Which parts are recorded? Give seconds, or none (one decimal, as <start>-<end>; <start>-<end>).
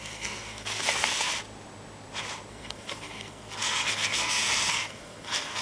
1.3-2.5